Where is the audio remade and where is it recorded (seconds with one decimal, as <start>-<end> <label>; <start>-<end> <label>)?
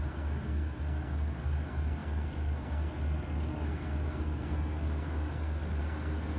0.0-6.4 remade